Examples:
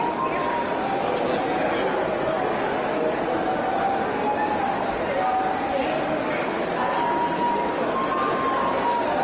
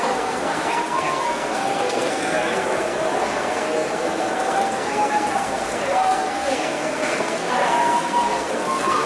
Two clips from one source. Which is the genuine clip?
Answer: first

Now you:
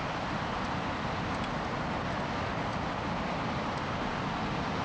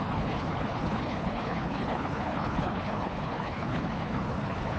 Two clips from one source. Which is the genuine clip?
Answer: first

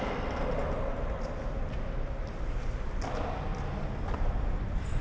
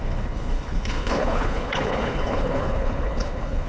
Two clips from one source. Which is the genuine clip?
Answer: first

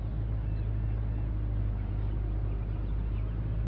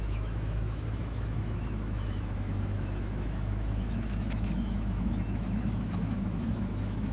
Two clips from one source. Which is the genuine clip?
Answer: first